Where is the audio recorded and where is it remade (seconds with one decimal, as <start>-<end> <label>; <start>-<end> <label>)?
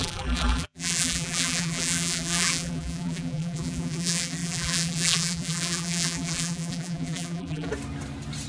0.0-7.7 remade; 7.7-8.5 recorded